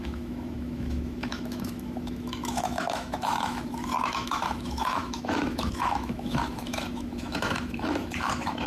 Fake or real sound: fake